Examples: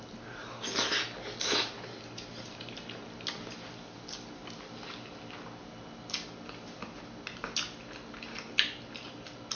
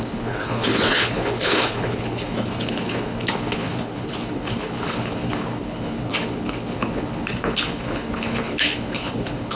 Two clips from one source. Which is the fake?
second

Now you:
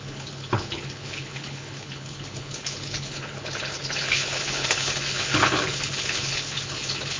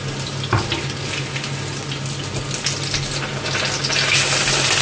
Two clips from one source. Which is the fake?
first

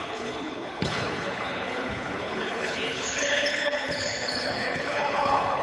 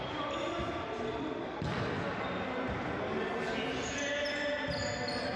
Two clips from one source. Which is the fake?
first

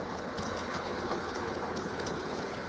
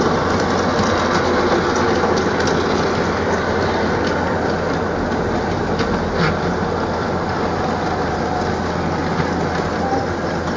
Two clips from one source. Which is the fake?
first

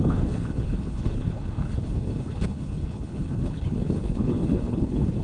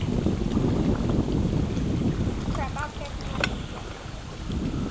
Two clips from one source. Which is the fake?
first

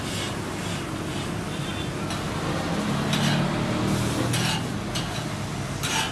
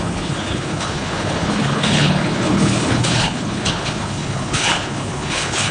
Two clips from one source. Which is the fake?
second